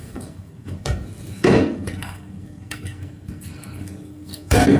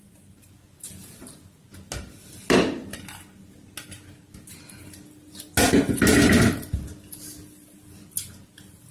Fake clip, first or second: first